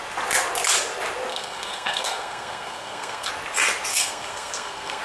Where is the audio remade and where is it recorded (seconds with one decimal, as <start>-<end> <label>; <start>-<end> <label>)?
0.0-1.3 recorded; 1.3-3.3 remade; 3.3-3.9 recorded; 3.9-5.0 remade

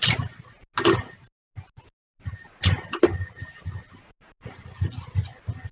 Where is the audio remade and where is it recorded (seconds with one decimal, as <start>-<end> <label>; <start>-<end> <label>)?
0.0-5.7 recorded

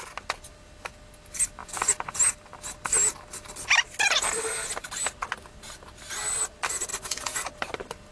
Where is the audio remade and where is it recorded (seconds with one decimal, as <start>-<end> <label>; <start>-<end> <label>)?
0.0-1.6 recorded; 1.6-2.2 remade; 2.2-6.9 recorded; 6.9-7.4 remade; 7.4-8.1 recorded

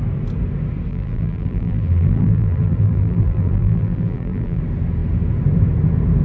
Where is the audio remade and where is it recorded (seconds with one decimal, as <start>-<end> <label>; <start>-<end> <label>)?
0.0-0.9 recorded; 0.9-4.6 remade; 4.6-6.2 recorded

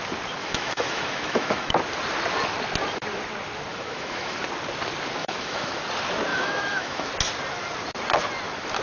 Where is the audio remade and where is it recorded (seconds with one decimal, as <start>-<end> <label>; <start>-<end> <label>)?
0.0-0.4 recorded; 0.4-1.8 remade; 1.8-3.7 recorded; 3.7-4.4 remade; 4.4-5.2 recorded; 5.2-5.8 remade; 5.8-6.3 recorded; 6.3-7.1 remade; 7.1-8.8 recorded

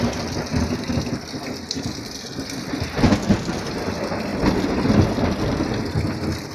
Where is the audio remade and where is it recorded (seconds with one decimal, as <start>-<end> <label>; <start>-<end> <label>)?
0.0-6.5 recorded

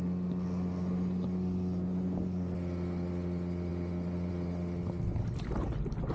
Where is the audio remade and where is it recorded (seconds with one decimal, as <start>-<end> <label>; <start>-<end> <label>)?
0.0-6.1 recorded